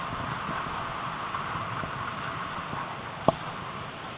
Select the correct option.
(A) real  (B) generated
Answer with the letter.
A